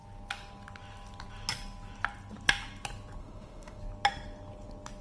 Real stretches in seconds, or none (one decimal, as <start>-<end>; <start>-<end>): 0.0-3.2; 3.8-5.0